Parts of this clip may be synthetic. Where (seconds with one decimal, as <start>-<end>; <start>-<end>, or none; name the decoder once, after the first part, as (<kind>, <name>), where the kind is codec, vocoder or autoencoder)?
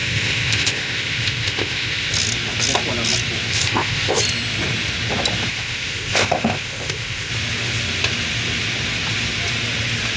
0.0-2.1 (codec, ZipCodec); 3.5-4.2; 5.5-7.3